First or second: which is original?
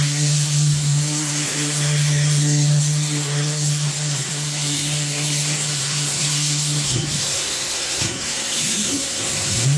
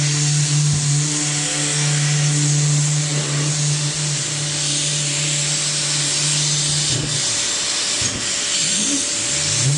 second